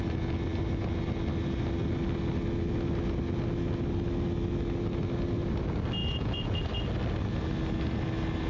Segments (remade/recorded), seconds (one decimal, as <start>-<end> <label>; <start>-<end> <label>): 0.0-6.0 recorded; 6.0-6.6 remade; 6.6-8.5 recorded